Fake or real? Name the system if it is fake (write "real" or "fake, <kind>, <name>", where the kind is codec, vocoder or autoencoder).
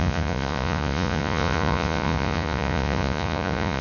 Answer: fake, vocoder, Vocos